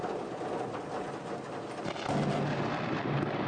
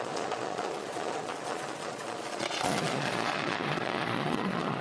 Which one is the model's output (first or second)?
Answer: second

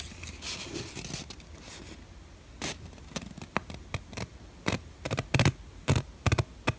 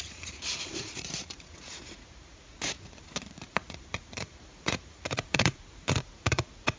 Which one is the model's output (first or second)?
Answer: second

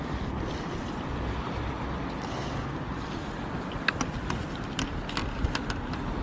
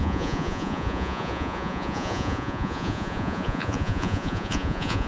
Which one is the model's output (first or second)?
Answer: second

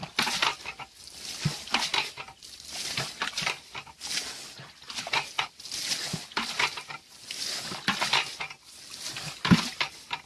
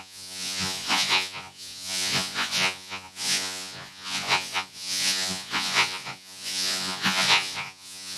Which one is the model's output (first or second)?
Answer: second